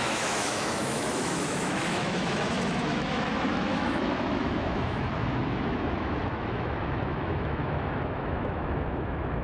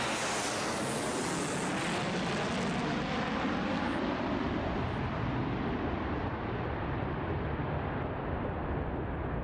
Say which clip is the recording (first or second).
second